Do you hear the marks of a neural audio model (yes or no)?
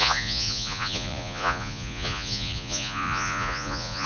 yes